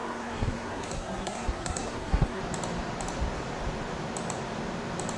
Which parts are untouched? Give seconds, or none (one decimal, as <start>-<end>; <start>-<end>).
2.4-5.2